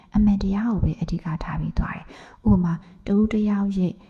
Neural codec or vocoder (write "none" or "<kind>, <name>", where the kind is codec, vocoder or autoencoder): autoencoder, DAC-VAE